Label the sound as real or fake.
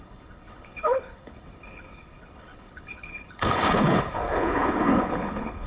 fake